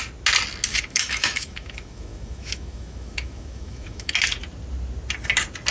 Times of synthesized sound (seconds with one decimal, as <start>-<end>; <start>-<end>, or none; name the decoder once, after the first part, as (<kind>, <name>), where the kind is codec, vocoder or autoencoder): 0.7-4.1 (autoencoder, DAC-VAE)